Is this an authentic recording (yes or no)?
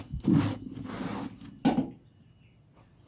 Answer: yes